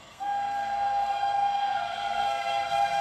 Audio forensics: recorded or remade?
remade